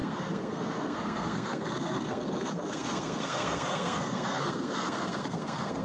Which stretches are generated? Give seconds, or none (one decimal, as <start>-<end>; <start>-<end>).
0.0-5.8